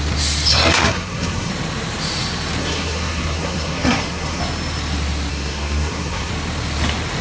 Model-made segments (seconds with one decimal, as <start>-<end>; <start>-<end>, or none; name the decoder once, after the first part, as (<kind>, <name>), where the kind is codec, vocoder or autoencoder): 0.5-1.5 (codec, SNAC); 2.6-4.4; 5.3-6.3